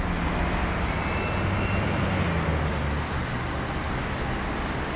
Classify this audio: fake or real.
real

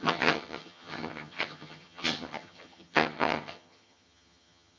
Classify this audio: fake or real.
fake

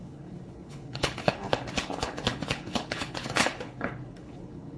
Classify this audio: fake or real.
fake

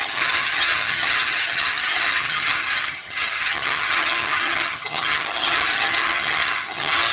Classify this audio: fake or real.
fake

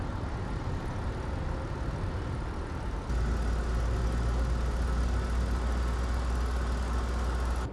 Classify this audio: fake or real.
real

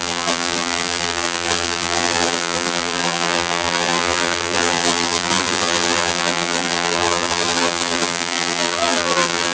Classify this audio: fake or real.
fake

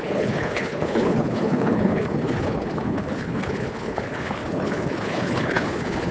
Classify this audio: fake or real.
fake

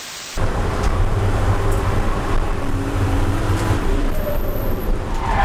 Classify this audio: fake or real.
fake